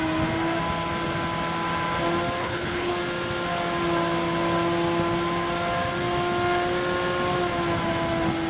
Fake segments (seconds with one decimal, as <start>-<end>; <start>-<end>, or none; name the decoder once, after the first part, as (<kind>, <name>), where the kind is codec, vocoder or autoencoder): 2.4-2.9 (codec, HILCodec)